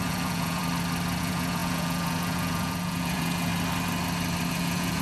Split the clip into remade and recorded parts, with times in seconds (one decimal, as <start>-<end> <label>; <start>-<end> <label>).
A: 0.0-0.6 remade; 0.6-1.2 recorded; 1.2-3.5 remade; 3.5-4.5 recorded; 4.5-5.0 remade